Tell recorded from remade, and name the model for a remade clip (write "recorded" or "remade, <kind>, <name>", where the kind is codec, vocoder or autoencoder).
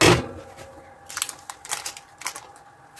recorded